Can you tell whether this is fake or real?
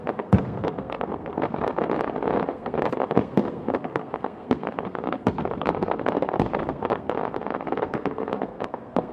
fake